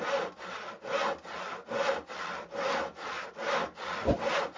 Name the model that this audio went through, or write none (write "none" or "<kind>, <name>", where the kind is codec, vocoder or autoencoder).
none